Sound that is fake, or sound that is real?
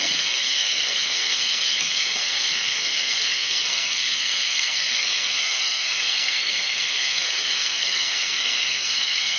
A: fake